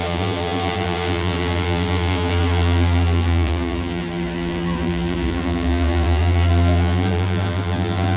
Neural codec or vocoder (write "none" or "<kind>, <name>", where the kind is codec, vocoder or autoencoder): vocoder, BigVGAN v2